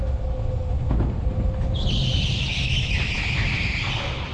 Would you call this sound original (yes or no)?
yes